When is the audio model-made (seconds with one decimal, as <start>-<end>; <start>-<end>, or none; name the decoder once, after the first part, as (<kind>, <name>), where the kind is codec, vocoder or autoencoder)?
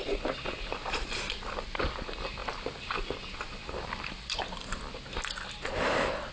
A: none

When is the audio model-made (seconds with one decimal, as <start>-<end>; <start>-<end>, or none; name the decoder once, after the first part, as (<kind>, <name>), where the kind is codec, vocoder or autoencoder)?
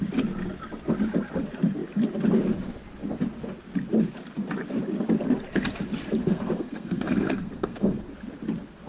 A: 6.2-8.0 (codec, SNAC)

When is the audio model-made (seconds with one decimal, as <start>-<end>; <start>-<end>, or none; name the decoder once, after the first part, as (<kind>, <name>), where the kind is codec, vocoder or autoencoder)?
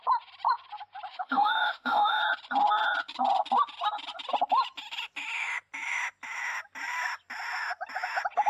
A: 1.1-2.2 (autoencoder, DAC-VAE)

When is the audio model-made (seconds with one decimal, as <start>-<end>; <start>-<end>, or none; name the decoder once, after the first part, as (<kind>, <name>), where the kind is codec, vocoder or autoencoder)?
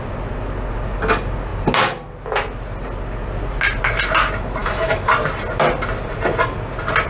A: 4.6-5.1 (autoencoder, DAC-VAE)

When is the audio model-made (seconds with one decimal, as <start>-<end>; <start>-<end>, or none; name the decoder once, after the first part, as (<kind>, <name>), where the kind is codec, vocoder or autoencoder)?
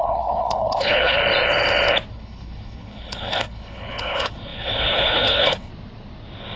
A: 0.0-1.2 (codec, HILCodec); 2.1-5.7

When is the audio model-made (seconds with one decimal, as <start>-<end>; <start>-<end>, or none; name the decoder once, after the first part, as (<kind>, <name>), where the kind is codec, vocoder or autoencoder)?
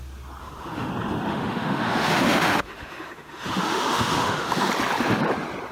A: 0.4-0.9 (autoencoder, DAC-VAE); 1.3-4.7